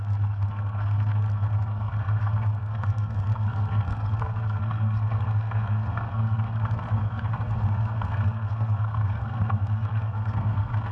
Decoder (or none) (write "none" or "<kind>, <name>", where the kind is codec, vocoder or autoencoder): codec, SNAC